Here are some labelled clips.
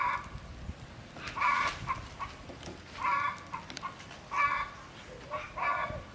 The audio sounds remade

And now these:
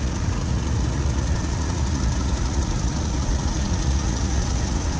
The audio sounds remade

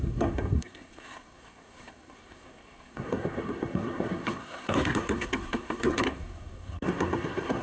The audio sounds remade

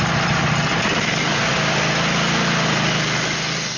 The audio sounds recorded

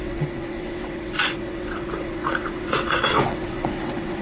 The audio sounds remade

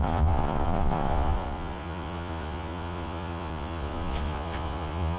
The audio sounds remade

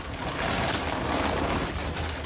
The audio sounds recorded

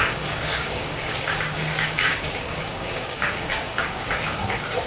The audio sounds remade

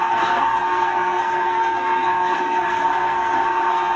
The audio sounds remade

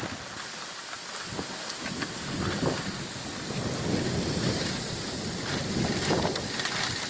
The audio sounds recorded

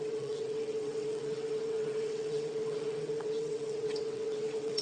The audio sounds remade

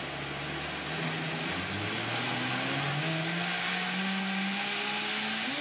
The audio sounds recorded